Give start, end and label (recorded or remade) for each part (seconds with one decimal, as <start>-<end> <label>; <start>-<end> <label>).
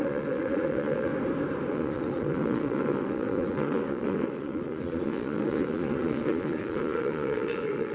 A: 0.0-1.1 remade; 1.1-1.7 recorded; 1.7-7.9 remade